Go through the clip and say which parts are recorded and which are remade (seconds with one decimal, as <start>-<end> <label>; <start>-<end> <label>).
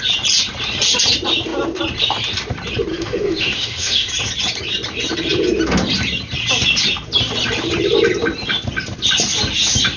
0.0-2.9 recorded; 2.9-4.1 remade; 4.1-10.0 recorded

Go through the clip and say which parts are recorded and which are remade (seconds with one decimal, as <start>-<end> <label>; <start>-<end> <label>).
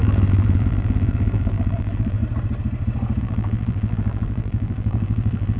0.0-2.2 remade; 2.2-3.2 recorded; 3.2-5.6 remade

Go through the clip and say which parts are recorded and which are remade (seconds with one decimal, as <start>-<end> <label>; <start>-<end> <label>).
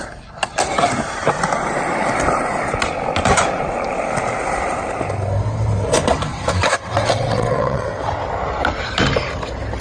0.0-6.3 recorded; 6.3-8.3 remade; 8.3-9.8 recorded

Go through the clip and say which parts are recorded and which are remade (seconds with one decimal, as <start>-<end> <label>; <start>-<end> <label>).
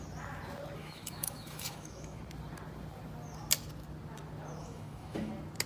0.0-0.8 recorded; 0.8-2.2 remade; 2.2-4.6 recorded; 4.6-5.3 remade; 5.3-5.7 recorded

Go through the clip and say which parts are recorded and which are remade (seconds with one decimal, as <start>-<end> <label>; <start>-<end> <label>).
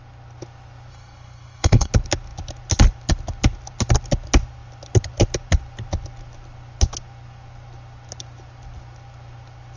0.0-0.9 recorded; 0.9-1.9 remade; 1.9-9.8 recorded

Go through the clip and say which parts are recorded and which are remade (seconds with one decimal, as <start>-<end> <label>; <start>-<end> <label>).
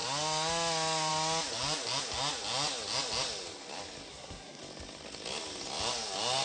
0.0-4.1 recorded; 4.1-4.6 remade; 4.6-6.4 recorded